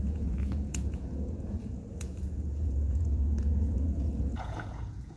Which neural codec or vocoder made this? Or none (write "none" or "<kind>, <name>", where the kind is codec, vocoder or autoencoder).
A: vocoder, Vocos